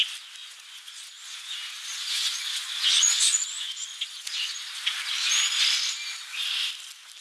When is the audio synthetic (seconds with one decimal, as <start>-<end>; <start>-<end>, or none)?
0.4-4.6

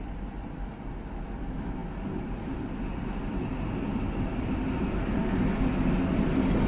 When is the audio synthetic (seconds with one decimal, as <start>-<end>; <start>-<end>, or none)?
none